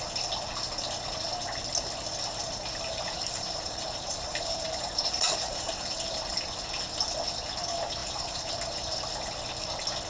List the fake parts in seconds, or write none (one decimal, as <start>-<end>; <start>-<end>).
2.9-6.3; 8.0-8.5